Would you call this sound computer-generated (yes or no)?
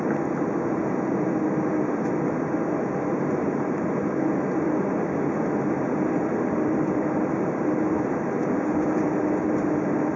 no